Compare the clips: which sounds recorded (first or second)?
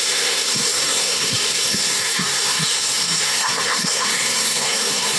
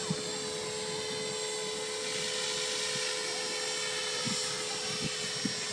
second